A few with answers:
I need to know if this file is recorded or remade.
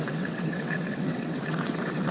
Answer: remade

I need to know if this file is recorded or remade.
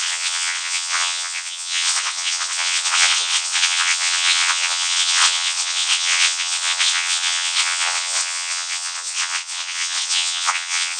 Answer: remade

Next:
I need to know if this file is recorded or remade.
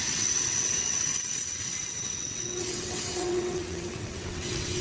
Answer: remade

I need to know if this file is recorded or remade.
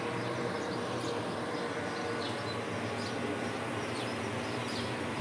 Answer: recorded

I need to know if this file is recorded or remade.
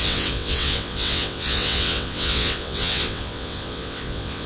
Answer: remade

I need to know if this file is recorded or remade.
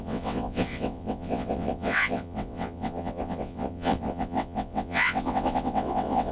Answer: remade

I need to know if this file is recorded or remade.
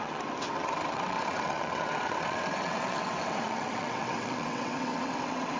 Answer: remade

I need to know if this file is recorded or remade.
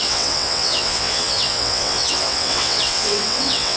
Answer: remade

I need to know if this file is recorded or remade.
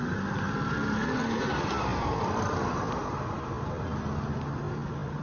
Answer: recorded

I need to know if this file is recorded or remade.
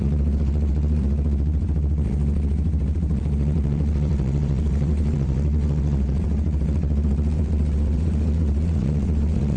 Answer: remade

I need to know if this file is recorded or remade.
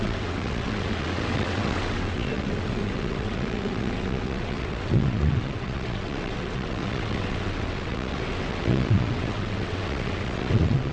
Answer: remade